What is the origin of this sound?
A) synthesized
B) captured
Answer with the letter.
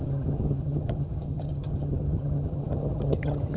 A